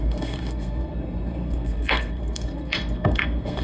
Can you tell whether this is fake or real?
fake